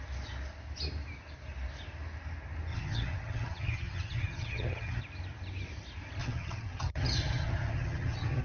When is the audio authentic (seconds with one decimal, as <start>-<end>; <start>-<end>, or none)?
0.0-2.7; 5.0-6.2